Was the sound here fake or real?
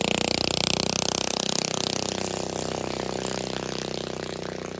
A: real